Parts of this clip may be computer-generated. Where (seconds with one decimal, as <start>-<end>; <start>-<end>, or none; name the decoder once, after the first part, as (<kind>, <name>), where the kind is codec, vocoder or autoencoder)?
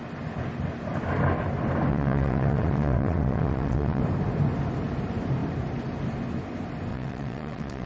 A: 1.9-4.0 (vocoder, WaveNeXt); 6.9-7.9